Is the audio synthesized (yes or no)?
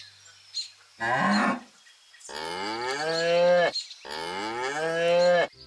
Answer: no